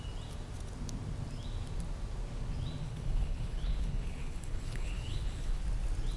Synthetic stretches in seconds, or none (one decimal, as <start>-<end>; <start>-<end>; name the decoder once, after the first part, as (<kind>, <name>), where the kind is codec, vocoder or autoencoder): 2.8-5.6 (codec, HILCodec)